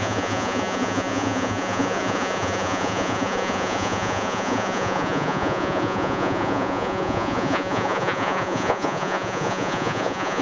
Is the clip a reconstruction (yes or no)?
yes